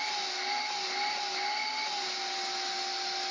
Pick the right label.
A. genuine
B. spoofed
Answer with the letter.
A